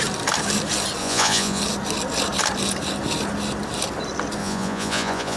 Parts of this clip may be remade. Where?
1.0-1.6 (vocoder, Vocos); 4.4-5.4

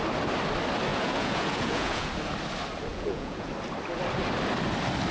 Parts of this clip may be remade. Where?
0.9-2.1 (vocoder, Vocos); 2.9-3.5

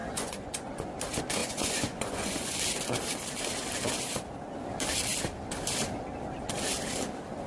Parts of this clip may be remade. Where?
0.0-0.7 (vocoder, Vocos); 1.4-2.6

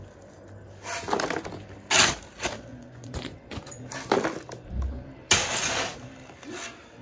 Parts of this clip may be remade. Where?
2.7-3.8 (vocoder, Vocos)

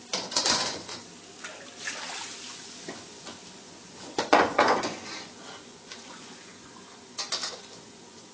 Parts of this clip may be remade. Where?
0.0-1.0 (vocoder, Vocos); 2.5-8.3

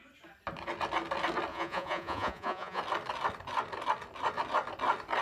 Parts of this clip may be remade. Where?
1.5-2.8 (vocoder, Vocos)